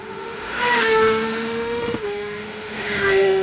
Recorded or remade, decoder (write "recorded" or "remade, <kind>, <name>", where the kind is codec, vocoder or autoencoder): remade, autoencoder, DAC-VAE